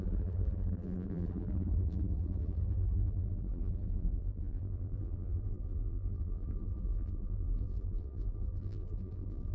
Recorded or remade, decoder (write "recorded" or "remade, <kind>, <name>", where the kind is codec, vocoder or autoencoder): remade, vocoder, BigVGAN v2